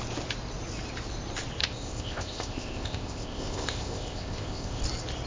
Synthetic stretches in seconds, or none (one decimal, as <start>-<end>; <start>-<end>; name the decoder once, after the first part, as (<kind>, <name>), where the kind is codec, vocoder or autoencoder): 1.6-4.8 (codec, ZipCodec)